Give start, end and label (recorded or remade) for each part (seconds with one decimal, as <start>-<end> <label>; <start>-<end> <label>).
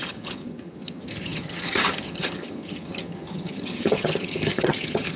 0.0-5.2 remade